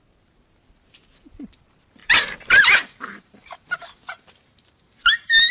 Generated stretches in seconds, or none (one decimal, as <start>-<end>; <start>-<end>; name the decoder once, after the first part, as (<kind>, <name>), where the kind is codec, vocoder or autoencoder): 2.0-5.5 (vocoder, BigVGAN v2)